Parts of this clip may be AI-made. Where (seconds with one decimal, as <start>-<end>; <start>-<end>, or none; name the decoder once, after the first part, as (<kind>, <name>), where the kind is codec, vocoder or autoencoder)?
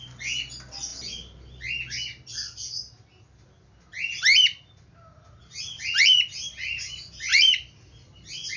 7.3-8.6 (vocoder, BigVGAN v2)